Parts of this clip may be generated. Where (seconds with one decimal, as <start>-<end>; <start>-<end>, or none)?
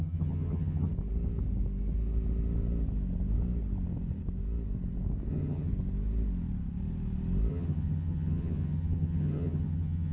0.0-0.9; 5.3-5.7; 7.5-10.1